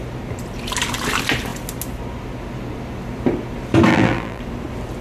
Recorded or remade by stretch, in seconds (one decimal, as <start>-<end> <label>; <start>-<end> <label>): 0.0-3.9 recorded; 3.9-4.4 remade; 4.4-5.0 recorded

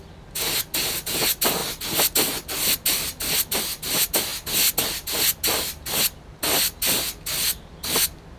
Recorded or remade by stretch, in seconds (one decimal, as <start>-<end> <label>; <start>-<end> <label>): 0.0-8.4 recorded

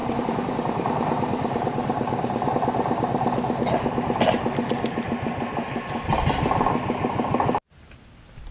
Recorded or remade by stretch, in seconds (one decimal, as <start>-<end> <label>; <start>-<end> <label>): 0.0-2.5 remade; 2.5-8.5 recorded

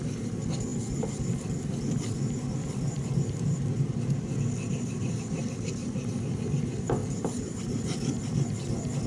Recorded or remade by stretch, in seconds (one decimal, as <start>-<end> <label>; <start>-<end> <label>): 0.0-7.0 recorded; 7.0-7.6 remade; 7.6-9.1 recorded

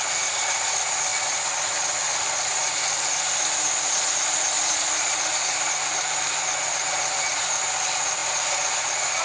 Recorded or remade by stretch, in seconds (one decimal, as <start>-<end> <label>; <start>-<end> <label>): 0.0-9.2 remade